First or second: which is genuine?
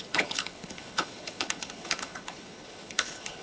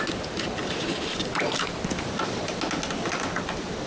second